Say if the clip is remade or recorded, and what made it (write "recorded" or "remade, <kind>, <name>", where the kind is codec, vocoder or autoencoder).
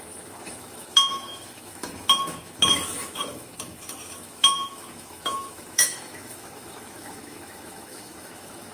remade, autoencoder, DAC-VAE